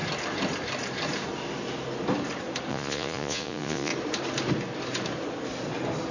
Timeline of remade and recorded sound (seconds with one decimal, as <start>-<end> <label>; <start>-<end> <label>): 0.0-2.7 recorded; 2.7-3.9 remade; 3.9-6.1 recorded